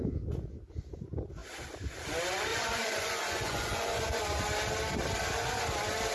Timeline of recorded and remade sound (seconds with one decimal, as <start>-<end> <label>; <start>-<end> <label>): 0.0-2.5 recorded; 2.5-4.2 remade; 4.2-6.1 recorded